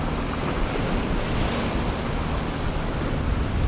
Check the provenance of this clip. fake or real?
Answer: real